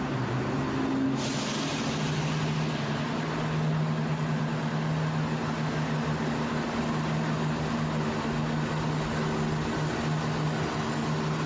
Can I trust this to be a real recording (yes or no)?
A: yes